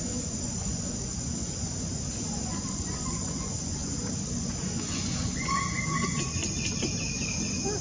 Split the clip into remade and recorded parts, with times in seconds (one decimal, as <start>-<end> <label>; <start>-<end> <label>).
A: 0.0-6.4 remade; 6.4-7.8 recorded